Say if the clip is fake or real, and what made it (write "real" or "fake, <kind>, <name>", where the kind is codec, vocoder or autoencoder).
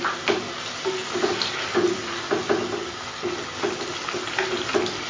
real